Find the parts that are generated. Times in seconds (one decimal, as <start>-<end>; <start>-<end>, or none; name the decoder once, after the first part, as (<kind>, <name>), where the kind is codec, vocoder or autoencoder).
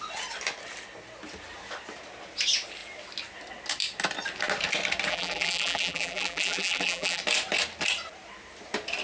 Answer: 5.1-7.2 (vocoder, BigVGAN v2)